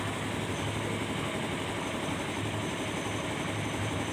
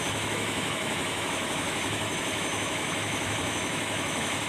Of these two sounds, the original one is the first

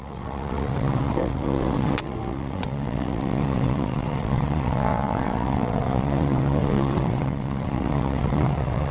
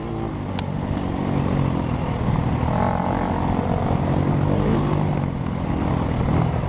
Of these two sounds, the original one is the second